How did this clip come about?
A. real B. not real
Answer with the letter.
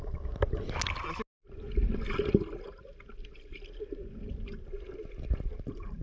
A